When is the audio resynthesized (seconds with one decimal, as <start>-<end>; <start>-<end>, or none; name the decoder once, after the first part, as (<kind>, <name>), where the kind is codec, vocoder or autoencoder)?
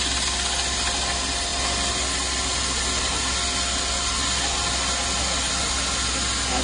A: none